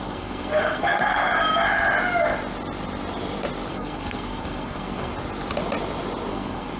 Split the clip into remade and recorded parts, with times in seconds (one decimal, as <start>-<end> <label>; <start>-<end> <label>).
0.0-1.3 remade; 1.3-3.7 recorded; 3.7-5.1 remade; 5.1-6.3 recorded; 6.3-6.8 remade